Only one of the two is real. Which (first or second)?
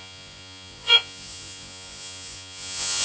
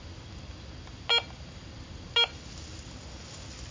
second